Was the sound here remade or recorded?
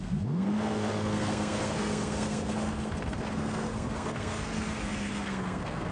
remade